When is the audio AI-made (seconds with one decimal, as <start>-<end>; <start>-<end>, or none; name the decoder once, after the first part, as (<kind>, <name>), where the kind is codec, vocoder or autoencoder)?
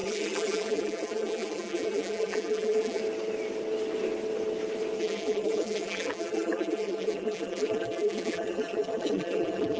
0.0-3.0 (vocoder, BigVGAN v2); 5.0-9.8